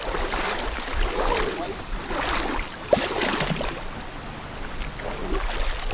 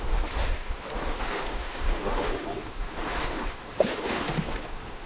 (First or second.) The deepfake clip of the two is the second